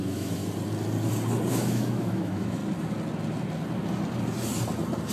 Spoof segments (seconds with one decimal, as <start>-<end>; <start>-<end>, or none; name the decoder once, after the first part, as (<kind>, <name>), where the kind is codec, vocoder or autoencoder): 0.0-0.4 (autoencoder, DAC-VAE); 1.5-2.6